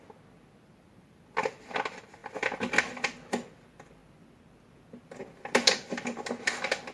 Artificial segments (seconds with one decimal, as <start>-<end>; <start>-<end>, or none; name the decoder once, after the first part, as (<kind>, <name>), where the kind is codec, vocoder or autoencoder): none